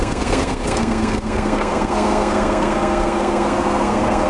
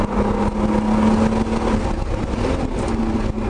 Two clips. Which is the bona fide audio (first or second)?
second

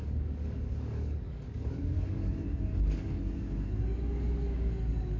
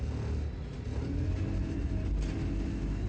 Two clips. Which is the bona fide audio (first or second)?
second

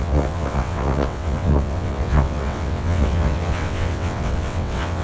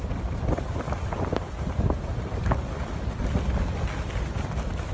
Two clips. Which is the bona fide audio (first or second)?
second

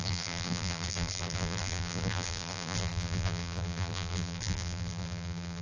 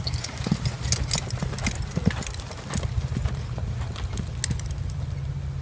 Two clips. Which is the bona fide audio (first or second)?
second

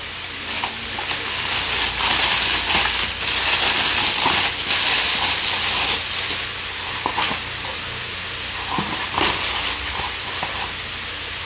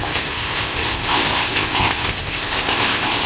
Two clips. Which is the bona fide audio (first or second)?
first